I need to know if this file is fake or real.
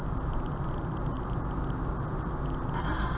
real